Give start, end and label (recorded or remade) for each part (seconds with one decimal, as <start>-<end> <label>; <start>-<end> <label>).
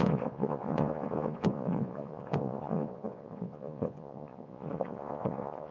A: 0.0-5.7 remade